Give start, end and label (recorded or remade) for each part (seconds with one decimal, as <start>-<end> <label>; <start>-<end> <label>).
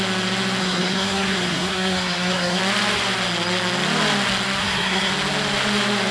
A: 0.0-0.6 recorded; 0.6-2.6 remade; 2.6-4.6 recorded; 4.6-5.1 remade; 5.1-6.1 recorded